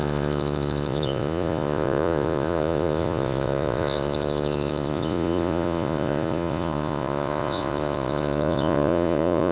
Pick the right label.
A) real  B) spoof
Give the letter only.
B